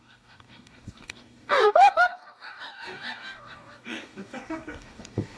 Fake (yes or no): yes